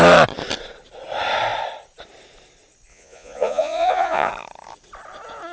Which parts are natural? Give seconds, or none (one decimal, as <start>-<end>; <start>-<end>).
0.0-2.9; 4.3-5.5

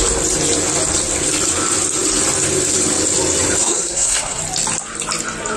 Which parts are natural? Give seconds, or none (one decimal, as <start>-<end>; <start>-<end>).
0.0-3.6; 4.4-5.6